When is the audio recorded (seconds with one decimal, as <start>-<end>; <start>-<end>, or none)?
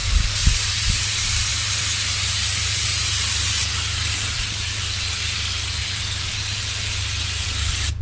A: 0.0-0.7